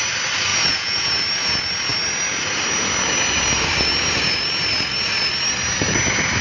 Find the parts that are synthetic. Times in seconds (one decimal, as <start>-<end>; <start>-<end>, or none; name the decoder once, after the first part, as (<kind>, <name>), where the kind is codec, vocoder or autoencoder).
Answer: 0.5-1.1 (vocoder, Vocos)